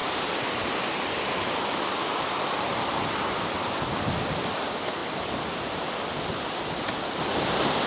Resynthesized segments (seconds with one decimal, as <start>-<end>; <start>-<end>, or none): 0.0-5.0; 7.1-7.9